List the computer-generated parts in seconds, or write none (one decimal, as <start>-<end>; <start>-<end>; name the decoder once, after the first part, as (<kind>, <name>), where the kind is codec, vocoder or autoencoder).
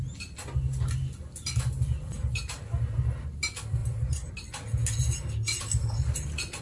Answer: 3.8-4.3 (vocoder, BigVGAN v2)